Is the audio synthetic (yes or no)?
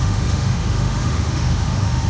yes